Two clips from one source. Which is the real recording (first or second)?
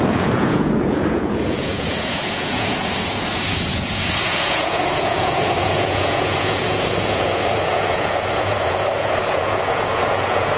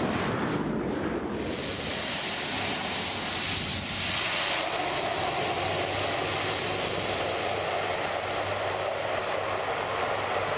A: second